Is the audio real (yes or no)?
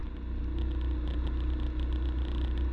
yes